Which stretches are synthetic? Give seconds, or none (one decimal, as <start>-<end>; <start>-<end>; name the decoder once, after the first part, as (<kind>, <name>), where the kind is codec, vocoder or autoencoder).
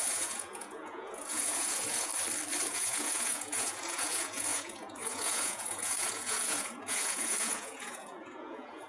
0.0-2.1 (vocoder, Vocos); 2.7-8.9